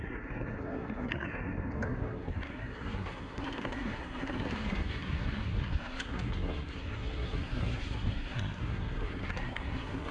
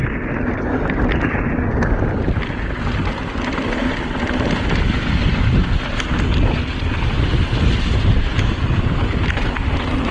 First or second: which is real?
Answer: second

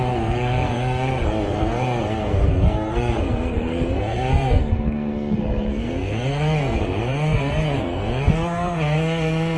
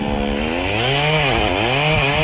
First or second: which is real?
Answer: second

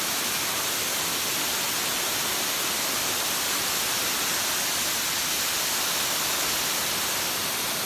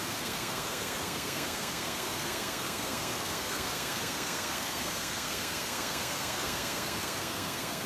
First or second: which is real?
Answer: first